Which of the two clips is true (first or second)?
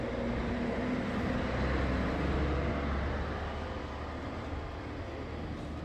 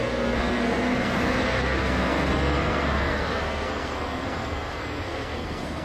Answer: first